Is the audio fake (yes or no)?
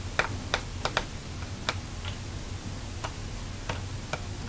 no